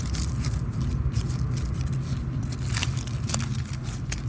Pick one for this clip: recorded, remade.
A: recorded